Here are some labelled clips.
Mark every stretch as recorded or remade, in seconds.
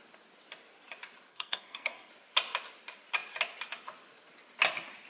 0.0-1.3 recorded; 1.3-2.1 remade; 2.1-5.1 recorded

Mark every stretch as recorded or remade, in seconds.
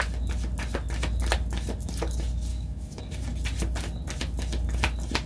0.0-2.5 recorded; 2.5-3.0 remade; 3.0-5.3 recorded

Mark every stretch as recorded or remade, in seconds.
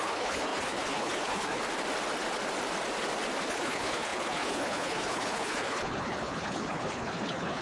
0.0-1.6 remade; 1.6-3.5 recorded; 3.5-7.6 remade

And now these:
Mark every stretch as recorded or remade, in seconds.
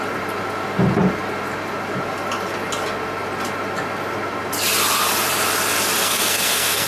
0.0-6.0 recorded; 6.0-6.9 remade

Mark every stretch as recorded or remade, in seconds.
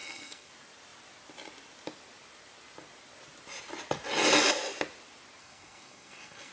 0.0-0.5 remade; 0.5-5.4 recorded; 5.4-6.5 remade